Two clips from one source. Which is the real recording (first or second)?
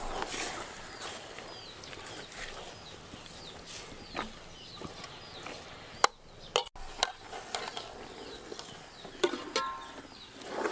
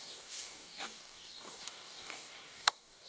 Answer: first